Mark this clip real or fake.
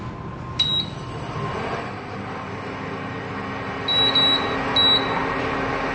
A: real